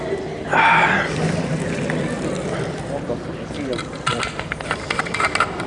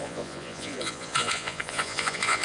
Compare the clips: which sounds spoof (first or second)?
second